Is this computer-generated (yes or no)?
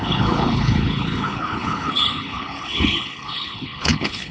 yes